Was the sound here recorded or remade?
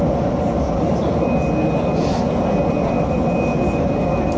recorded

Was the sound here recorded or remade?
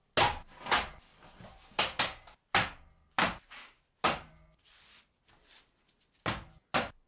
recorded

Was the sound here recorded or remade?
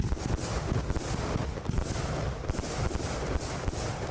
recorded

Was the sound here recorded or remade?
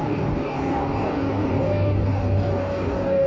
remade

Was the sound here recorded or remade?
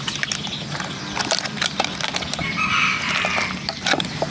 recorded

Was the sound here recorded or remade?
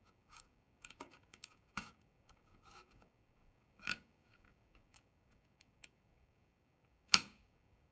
remade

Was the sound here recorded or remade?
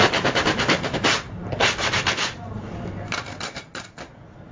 recorded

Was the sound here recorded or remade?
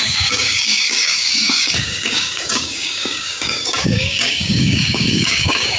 remade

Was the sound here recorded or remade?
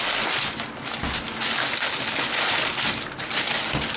recorded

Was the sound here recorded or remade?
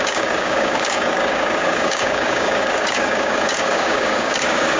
remade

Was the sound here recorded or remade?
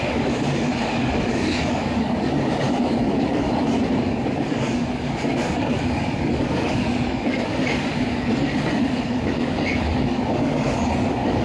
remade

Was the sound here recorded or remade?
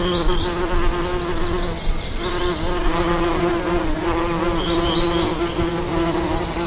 recorded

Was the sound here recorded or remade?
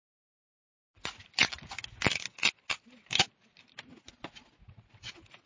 recorded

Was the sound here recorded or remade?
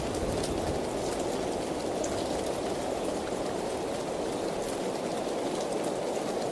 recorded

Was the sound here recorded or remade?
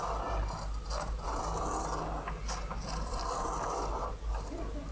recorded